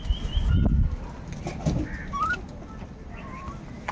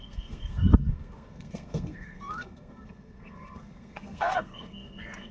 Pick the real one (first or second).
first